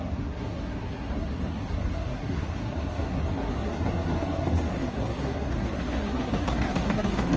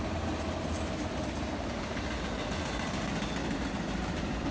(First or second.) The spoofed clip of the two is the first